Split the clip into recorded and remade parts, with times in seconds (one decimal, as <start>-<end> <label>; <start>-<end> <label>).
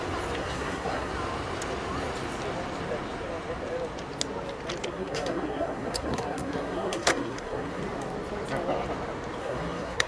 0.0-0.4 recorded; 0.4-1.1 remade; 1.1-4.9 recorded; 4.9-7.8 remade; 7.8-9.4 recorded; 9.4-10.1 remade